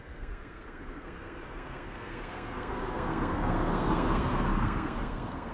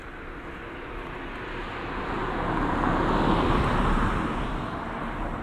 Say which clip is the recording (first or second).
second